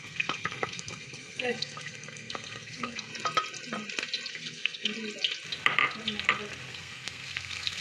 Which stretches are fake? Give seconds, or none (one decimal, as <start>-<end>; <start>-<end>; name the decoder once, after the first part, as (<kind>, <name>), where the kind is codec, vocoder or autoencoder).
0.0-3.1 (codec, SNAC); 4.3-4.9; 6.7-7.8